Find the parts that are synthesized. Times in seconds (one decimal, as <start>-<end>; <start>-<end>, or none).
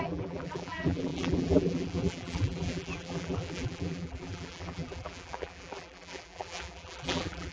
0.0-7.5